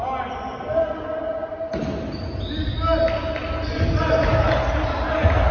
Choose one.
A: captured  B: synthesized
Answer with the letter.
A